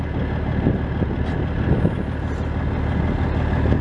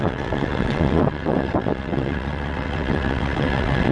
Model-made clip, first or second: second